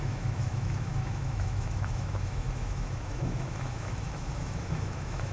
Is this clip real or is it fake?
fake